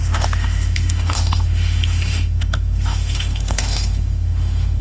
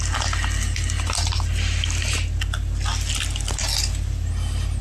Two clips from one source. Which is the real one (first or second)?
second